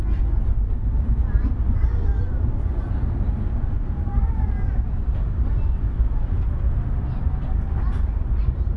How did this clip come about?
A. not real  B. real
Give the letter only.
B